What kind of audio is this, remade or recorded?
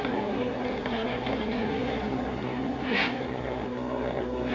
remade